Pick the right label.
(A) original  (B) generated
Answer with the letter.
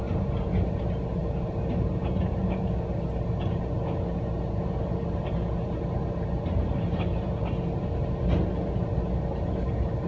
A